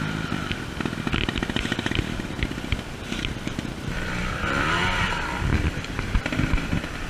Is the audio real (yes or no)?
no